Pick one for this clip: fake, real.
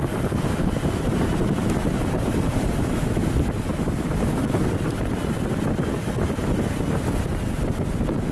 real